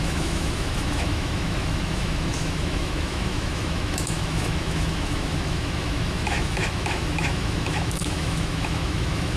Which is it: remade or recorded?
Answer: remade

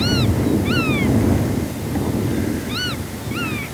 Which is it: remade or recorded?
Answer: recorded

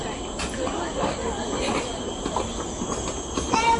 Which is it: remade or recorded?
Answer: recorded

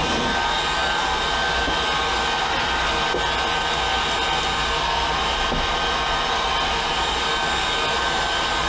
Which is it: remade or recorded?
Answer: recorded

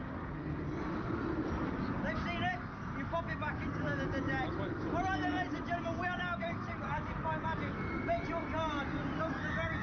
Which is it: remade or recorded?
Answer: recorded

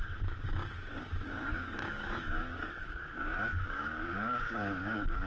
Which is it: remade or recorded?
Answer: remade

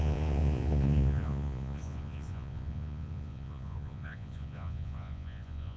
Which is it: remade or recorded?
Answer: remade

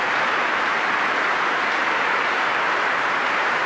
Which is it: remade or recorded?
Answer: remade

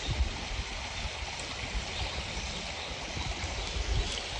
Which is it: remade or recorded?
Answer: recorded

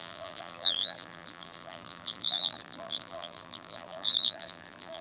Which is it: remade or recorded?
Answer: remade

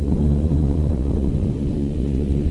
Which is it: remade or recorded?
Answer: remade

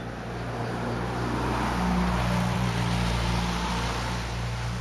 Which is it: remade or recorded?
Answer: recorded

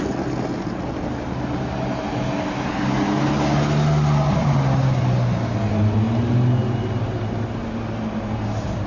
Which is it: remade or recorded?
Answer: recorded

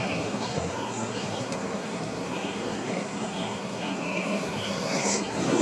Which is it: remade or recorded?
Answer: remade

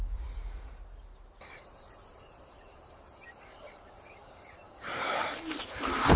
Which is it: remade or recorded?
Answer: remade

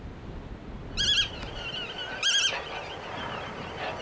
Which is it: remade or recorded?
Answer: recorded